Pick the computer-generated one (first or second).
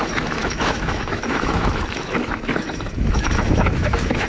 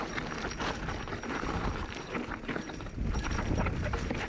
first